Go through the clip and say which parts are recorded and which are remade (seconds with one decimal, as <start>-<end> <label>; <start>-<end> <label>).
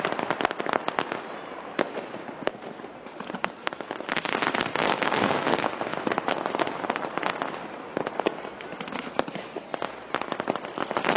0.0-4.7 recorded; 4.7-5.5 remade; 5.5-11.2 recorded